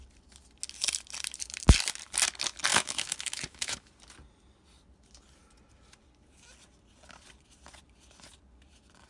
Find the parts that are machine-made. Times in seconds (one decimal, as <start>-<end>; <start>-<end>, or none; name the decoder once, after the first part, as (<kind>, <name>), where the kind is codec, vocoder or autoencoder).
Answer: 2.7-3.9 (autoencoder, DAC-VAE)